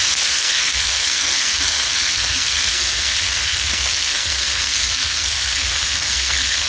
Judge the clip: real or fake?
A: fake